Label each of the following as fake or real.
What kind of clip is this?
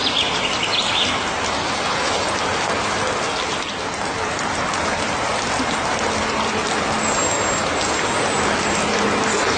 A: real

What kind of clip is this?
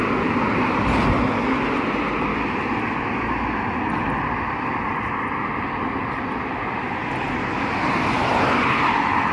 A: real